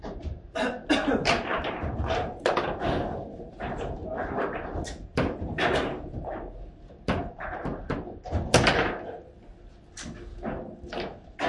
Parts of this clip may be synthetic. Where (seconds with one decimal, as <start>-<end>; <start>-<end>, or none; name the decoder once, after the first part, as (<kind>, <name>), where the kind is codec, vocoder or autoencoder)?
1.5-6.3 (vocoder, BigVGAN v2)